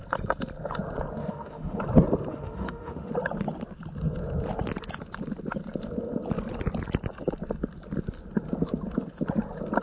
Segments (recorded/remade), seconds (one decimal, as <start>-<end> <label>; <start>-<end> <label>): 0.0-1.2 recorded; 1.2-1.8 remade; 1.8-2.3 recorded; 2.3-3.1 remade; 3.1-9.8 recorded